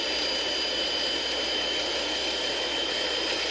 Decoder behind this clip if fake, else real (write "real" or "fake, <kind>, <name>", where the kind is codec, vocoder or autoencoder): real